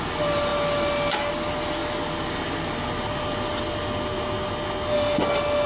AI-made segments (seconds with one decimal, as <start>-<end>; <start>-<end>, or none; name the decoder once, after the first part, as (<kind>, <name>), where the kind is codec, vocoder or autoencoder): none

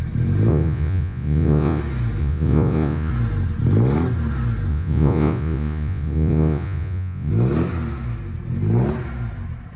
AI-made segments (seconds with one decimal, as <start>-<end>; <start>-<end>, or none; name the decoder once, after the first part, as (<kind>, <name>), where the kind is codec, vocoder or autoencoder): 0.5-1.8 (vocoder, Vocos); 2.2-3.1; 4.7-7.3

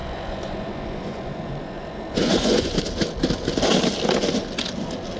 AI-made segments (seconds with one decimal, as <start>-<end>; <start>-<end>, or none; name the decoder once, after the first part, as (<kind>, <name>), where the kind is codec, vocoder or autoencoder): 0.0-2.8 (vocoder, Vocos)

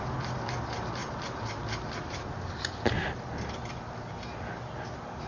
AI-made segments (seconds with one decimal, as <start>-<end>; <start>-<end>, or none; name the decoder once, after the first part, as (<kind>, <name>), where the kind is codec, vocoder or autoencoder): none